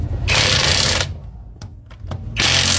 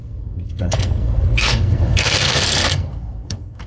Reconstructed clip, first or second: second